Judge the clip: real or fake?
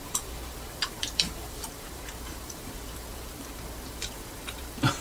fake